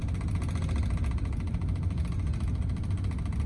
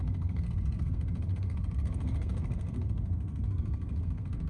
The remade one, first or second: second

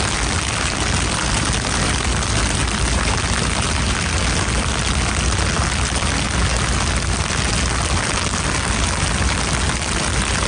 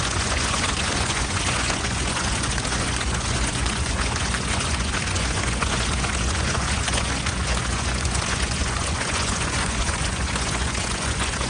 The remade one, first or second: second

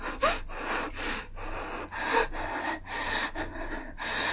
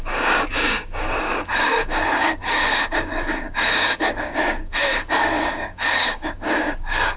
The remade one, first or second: second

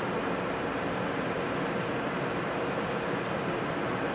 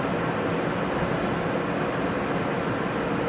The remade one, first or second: first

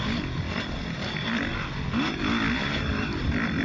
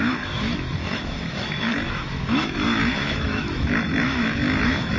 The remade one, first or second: second